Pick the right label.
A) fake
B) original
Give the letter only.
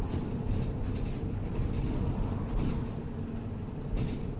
B